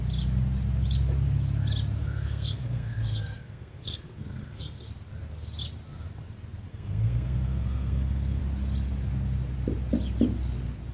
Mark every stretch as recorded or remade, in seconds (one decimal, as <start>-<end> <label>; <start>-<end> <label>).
0.0-2.0 recorded; 2.0-4.9 remade; 4.9-6.7 recorded; 6.7-8.4 remade; 8.4-10.9 recorded